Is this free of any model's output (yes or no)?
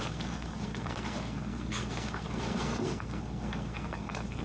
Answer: no